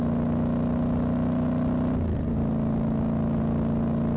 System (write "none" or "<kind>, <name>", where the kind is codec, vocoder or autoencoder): none